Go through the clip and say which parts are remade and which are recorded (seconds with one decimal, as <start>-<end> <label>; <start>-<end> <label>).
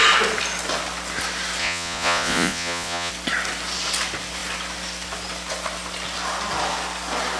0.0-1.6 recorded; 1.6-3.1 remade; 3.1-7.4 recorded